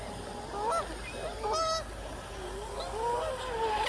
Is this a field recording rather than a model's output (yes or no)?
yes